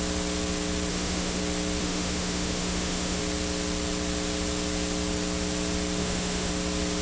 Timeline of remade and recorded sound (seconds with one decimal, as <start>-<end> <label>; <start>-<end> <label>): 0.0-0.9 recorded; 0.9-1.4 remade; 1.4-1.8 recorded; 1.8-3.2 remade; 3.2-6.0 recorded; 6.0-6.5 remade; 6.5-7.0 recorded